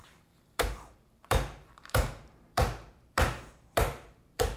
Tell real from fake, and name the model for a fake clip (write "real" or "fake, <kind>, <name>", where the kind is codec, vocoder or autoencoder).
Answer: fake, vocoder, BigVGAN v2